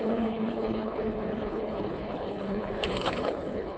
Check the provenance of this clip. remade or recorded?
remade